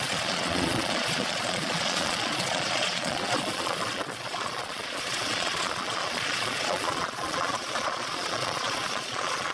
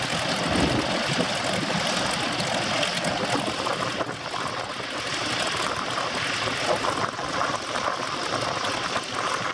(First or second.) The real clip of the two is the second